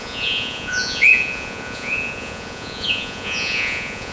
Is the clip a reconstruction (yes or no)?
yes